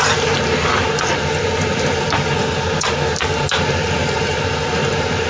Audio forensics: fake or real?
real